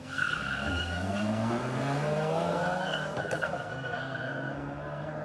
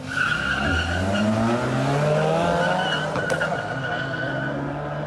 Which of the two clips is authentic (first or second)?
second